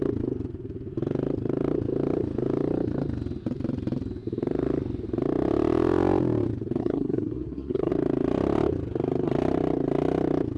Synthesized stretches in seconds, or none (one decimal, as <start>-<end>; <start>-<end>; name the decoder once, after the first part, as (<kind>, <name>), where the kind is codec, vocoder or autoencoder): 6.8-7.9 (codec, SNAC)